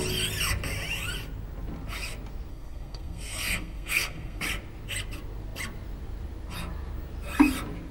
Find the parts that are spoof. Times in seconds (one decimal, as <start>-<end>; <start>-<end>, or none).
2.5-4.4